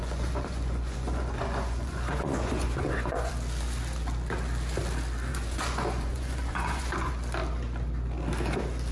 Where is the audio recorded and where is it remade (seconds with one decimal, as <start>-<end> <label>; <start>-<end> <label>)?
0.0-3.3 remade; 3.3-5.3 recorded; 5.3-7.1 remade; 7.1-8.9 recorded